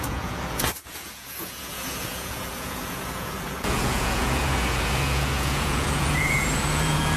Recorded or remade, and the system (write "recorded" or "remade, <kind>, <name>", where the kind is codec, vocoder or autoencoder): remade, vocoder, Vocos